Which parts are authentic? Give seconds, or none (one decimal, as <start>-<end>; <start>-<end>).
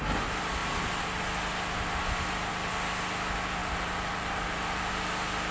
0.0-3.6; 4.9-5.5